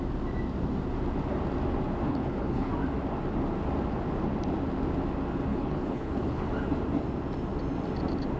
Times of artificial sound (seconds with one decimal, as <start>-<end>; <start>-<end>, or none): 2.1-2.7; 5.5-6.5